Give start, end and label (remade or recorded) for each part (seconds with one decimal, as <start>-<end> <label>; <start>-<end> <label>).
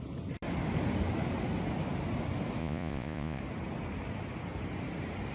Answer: 0.0-2.6 recorded; 2.6-3.4 remade; 3.4-5.3 recorded